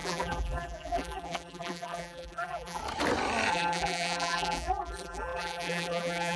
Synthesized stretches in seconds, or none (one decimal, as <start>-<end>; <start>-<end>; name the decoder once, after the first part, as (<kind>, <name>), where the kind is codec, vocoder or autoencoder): 0.0-2.8 (vocoder, BigVGAN v2); 3.5-6.4